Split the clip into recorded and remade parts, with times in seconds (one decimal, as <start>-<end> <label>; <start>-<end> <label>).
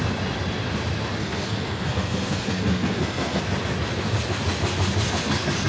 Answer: 0.0-1.2 recorded; 1.2-3.4 remade; 3.4-5.7 recorded